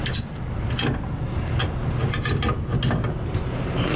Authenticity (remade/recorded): recorded